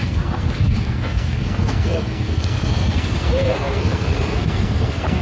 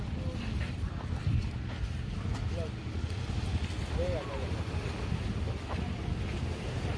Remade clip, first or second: first